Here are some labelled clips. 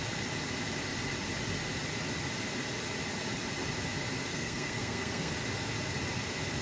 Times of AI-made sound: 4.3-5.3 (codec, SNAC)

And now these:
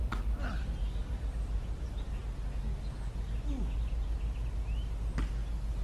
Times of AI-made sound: 0.0-2.2 (vocoder, BigVGAN v2)

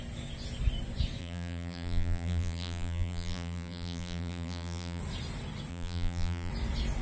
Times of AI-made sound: 1.2-5.0 (vocoder, BigVGAN v2); 5.7-6.5

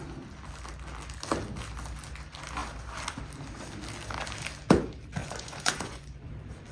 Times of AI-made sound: 5.2-6.3 (vocoder, Vocos)

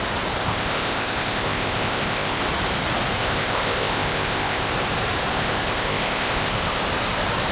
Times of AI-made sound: 0.4-2.4 (codec, ZipCodec); 3.2-4.7; 5.3-6.8

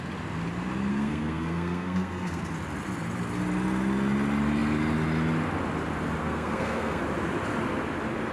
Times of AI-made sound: 0.9-2.4 (codec, SNAC); 6.2-7.0